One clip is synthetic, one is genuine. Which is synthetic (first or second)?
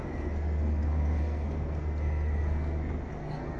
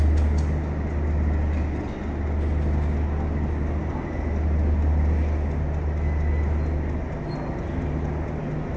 first